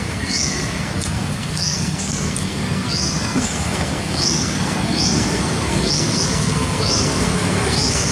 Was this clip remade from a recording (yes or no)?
yes